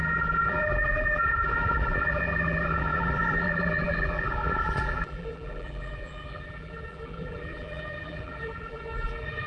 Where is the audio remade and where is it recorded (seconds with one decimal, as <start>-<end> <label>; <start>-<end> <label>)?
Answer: 0.0-9.5 remade